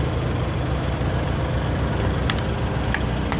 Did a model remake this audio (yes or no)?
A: no